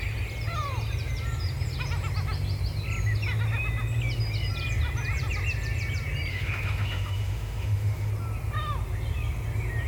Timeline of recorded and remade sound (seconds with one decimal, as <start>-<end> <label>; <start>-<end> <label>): 0.0-6.3 recorded; 6.3-8.1 remade; 8.1-9.9 recorded